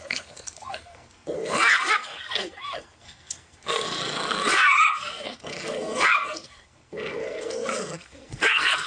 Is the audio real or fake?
fake